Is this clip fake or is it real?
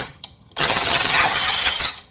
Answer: fake